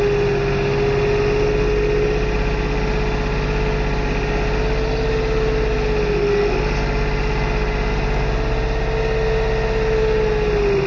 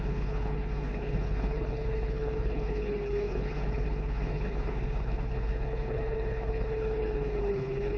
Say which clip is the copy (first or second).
second